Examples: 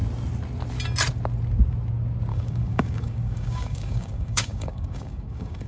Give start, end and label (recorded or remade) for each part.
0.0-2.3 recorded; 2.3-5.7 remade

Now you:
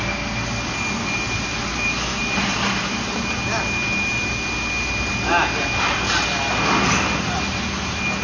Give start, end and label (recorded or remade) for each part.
0.0-8.2 recorded

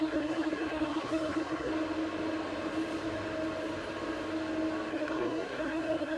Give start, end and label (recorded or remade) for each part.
0.0-1.7 remade; 1.7-4.9 recorded; 4.9-6.2 remade

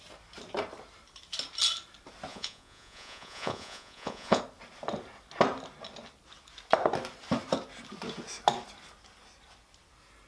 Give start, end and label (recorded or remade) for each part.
0.0-2.3 recorded; 2.3-4.4 remade; 4.4-10.3 recorded

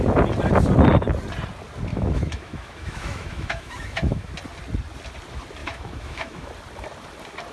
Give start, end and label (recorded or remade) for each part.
0.0-1.9 recorded; 1.9-4.3 remade; 4.3-5.6 recorded; 5.6-6.5 remade; 6.5-7.5 recorded

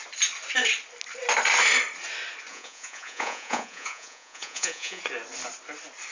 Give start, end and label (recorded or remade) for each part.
0.0-2.5 recorded; 2.5-5.0 remade; 5.0-6.1 recorded